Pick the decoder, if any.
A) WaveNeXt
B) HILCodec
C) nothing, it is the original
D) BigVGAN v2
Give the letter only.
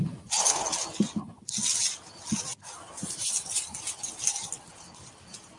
C